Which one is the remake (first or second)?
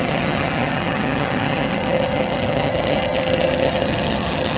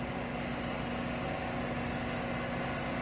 first